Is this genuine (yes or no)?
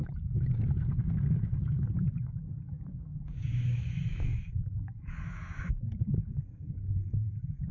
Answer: no